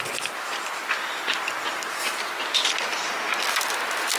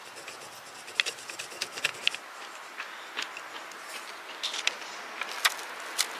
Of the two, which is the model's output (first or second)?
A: first